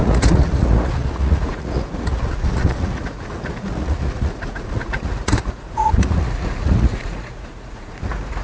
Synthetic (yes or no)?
yes